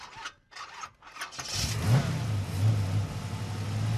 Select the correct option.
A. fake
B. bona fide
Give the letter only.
B